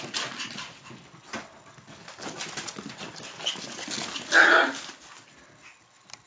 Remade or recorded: recorded